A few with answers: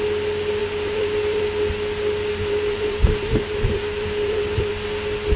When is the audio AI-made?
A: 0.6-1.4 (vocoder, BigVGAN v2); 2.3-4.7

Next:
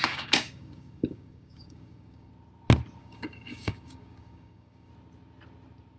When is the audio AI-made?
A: 0.0-2.3 (codec, DAC); 3.0-4.9

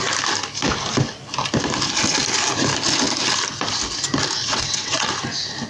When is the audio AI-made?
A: 4.4-5.1 (vocoder, WaveNeXt)

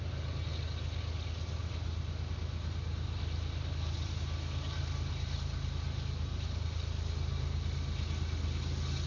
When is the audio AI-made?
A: none